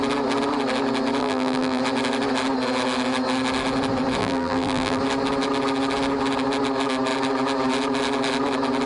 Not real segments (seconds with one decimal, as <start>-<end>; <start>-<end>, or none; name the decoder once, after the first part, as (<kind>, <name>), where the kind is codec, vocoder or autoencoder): 1.2-1.8 (vocoder, BigVGAN v2); 4.2-5.0